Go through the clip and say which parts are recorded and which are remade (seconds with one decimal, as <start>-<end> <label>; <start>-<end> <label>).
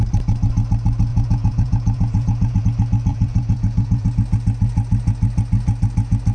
0.0-1.1 recorded; 1.1-2.6 remade; 2.6-3.1 recorded; 3.1-4.1 remade; 4.1-6.3 recorded